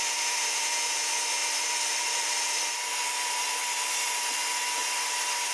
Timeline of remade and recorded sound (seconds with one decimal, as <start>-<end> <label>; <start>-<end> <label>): 0.0-1.4 recorded; 1.4-2.7 remade; 2.7-3.6 recorded; 3.6-4.1 remade; 4.1-4.8 recorded; 4.8-5.5 remade